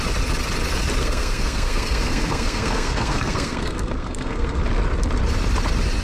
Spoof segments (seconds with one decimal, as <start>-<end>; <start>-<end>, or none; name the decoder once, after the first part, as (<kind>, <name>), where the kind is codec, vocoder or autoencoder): 1.0-4.6 (codec, SNAC)